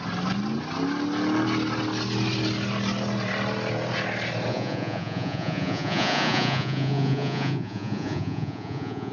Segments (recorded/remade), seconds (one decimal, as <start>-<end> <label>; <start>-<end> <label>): 0.0-4.5 recorded; 4.5-9.1 remade